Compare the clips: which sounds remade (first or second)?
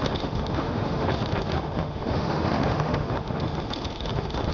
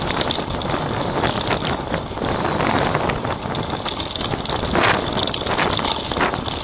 first